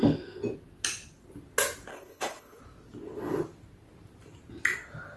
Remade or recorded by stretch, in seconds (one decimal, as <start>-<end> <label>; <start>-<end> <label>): 0.0-1.9 recorded; 1.9-2.6 remade; 2.6-5.2 recorded